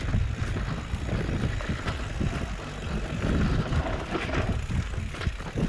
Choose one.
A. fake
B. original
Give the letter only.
B